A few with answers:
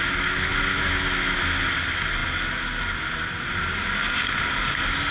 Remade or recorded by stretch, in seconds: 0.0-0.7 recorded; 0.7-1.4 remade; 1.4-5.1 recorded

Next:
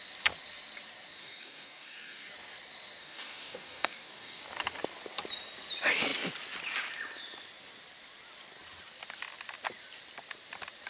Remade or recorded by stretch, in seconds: 0.0-1.2 recorded; 1.2-2.3 remade; 2.3-3.0 recorded; 3.0-4.4 remade; 4.4-10.9 recorded

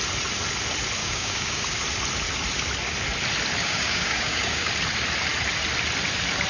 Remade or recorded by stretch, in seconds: 0.0-1.0 recorded; 1.0-1.8 remade; 1.8-3.6 recorded; 3.6-4.7 remade; 4.7-6.5 recorded

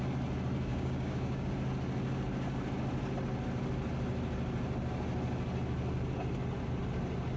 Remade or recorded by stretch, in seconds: 0.0-0.7 recorded; 0.7-1.5 remade; 1.5-7.4 recorded